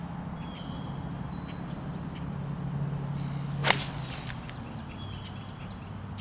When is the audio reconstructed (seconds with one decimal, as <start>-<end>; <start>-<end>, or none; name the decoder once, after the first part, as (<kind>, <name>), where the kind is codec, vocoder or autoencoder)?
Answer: none